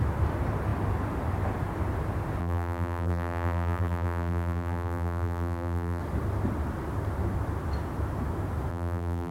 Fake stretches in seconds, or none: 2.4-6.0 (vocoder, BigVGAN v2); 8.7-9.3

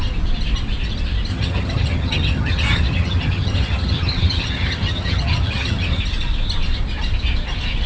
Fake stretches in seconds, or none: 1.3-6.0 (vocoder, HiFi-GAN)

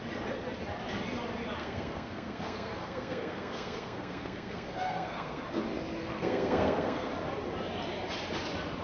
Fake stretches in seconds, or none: 1.6-5.6 (codec, SNAC); 6.0-7.1

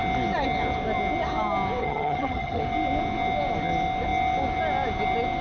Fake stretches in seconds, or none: 1.8-2.6 (vocoder, HiFi-GAN)

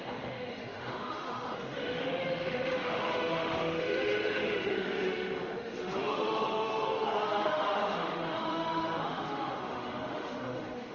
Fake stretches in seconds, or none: 0.0-10.9 (autoencoder, DAC-VAE)

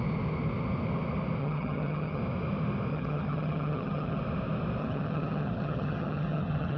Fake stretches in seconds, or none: 1.4-2.2 (vocoder, HiFi-GAN); 2.9-4.2; 4.8-6.8

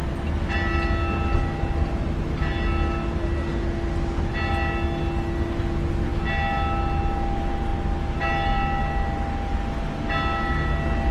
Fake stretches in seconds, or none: none